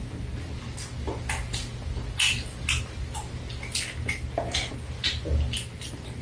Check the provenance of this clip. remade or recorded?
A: recorded